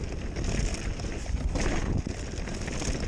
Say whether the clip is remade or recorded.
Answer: recorded